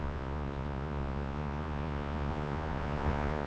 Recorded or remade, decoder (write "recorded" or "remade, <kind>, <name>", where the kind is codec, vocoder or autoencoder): remade, vocoder, Vocos